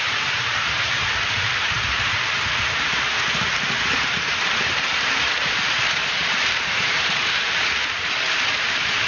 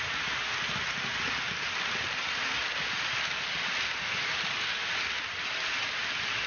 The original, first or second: second